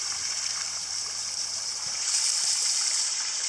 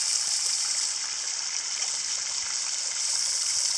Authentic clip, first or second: second